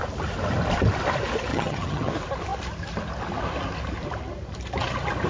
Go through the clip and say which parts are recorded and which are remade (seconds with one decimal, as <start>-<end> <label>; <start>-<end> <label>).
0.0-1.5 recorded; 1.5-2.1 remade; 2.1-5.3 recorded